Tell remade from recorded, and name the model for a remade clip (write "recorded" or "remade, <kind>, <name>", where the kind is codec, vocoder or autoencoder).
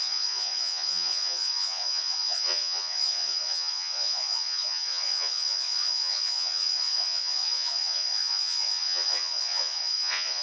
remade, vocoder, Vocos